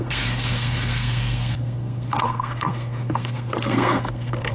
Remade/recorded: remade